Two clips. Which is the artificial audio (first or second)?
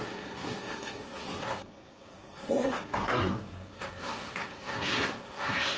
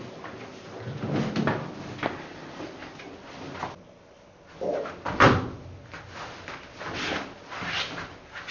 first